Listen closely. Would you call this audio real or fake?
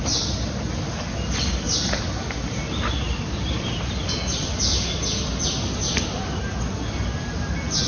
real